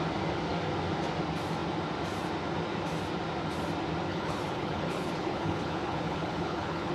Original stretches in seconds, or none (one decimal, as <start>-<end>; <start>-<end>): 0.0-4.1